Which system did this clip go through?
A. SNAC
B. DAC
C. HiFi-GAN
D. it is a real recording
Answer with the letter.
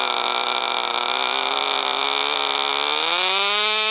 D